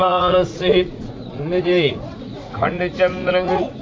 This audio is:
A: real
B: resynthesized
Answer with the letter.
B